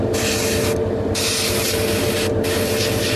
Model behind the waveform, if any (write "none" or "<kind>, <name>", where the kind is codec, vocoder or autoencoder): none